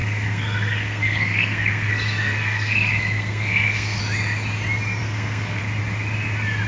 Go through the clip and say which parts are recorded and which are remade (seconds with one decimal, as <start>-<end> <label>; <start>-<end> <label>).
0.0-4.0 remade; 4.0-5.0 recorded; 5.0-5.6 remade; 5.6-6.7 recorded